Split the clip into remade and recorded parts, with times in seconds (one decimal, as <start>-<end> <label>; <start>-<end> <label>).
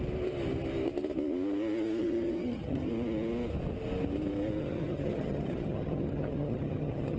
0.0-2.0 recorded; 2.0-2.9 remade; 2.9-4.6 recorded; 4.6-7.2 remade